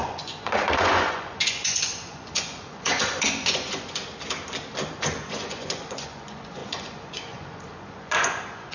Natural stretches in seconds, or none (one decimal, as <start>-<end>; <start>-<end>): 4.0-5.0